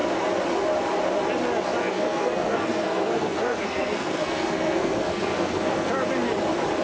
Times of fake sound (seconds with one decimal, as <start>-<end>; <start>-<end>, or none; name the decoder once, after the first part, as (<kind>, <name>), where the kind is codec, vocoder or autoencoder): 1.8-5.9 (codec, SNAC)